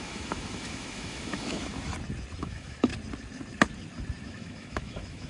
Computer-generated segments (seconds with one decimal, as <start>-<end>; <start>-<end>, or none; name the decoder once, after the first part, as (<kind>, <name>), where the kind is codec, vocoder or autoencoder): 0.0-1.9 (autoencoder, DAC-VAE); 2.4-2.9; 4.2-5.3